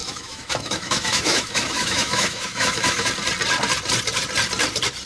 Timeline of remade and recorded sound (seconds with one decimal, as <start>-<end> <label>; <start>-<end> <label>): 0.0-3.1 remade; 3.1-5.1 recorded